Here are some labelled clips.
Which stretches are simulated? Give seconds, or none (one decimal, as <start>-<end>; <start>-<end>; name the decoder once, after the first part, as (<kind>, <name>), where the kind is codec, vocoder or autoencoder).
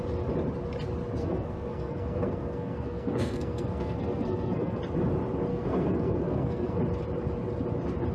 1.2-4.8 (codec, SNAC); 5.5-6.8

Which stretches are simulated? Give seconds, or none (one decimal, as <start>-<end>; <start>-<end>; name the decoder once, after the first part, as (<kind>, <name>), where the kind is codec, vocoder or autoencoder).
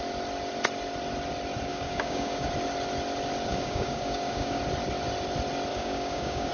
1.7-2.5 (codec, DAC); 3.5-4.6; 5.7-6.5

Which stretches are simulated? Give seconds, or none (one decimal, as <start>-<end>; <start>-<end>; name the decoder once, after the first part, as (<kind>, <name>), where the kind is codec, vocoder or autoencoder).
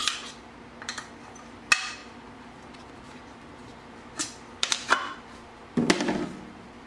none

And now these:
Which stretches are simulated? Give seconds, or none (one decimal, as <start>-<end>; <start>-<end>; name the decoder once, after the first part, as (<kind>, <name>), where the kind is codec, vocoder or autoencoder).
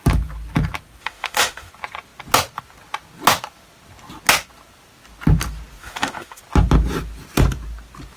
1.0-1.7 (autoencoder, DAC-VAE); 5.8-6.4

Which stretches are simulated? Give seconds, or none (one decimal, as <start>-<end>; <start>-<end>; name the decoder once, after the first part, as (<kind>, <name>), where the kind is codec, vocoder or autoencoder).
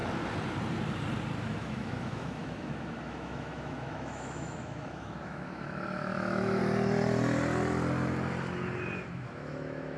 1.4-6.6 (autoencoder, DAC-VAE); 9.1-10.0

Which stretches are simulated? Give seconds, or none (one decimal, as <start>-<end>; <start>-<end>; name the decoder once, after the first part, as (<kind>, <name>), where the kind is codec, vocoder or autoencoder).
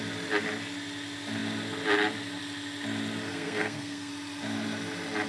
3.3-4.1 (codec, SNAC)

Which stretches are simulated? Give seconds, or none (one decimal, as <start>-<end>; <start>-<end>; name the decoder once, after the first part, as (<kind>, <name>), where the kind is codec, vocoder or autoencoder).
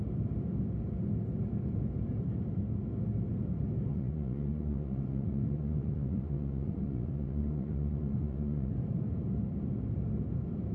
3.9-8.7 (vocoder, Vocos)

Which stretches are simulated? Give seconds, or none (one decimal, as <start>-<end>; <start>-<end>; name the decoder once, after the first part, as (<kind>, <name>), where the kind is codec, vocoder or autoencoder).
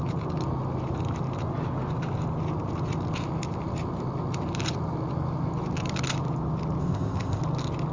6.8-7.4 (codec, ZipCodec)